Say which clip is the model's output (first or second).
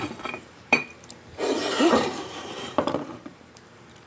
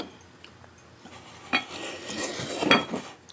first